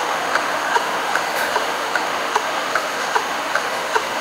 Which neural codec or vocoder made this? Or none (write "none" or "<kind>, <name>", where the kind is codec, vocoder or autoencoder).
autoencoder, DAC-VAE